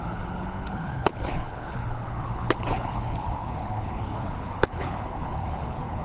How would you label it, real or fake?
fake